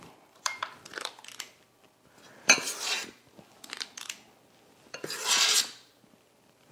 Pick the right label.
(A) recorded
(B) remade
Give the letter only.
B